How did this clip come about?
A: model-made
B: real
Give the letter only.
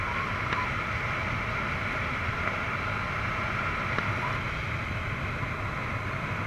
B